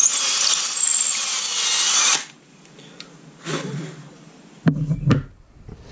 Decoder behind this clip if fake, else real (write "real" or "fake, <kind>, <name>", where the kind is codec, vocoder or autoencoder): real